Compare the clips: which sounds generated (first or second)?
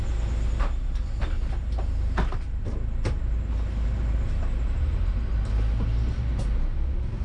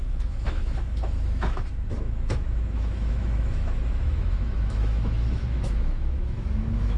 second